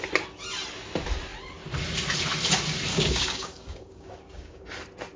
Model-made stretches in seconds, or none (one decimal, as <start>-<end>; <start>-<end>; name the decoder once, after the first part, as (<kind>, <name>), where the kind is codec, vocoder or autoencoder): 2.9-4.7 (codec, DAC)